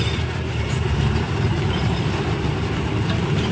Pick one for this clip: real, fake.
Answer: fake